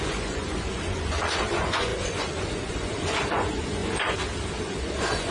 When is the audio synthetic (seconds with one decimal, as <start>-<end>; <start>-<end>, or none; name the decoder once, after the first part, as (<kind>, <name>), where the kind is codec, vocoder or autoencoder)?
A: 0.0-3.8 (vocoder, Vocos); 4.6-5.3